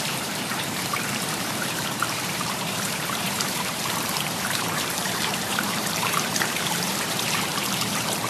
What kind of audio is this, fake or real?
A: fake